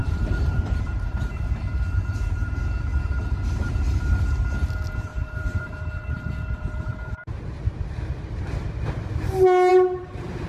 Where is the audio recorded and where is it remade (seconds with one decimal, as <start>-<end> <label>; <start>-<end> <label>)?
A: 0.0-1.5 remade; 1.5-5.1 recorded; 5.1-8.4 remade; 8.4-9.7 recorded; 9.7-10.5 remade